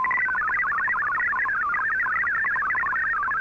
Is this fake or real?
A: real